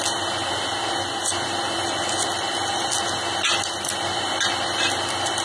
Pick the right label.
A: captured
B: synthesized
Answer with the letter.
A